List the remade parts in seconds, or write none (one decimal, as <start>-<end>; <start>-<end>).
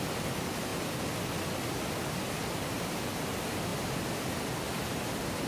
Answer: none